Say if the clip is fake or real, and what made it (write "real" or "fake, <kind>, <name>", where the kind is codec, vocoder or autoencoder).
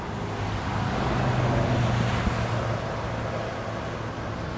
real